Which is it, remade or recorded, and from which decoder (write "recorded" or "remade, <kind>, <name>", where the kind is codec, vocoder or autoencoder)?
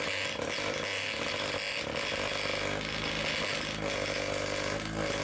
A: recorded